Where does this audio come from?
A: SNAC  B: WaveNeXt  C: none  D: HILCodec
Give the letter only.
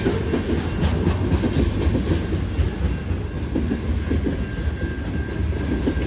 C